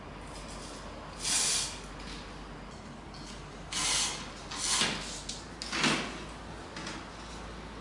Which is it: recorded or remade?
recorded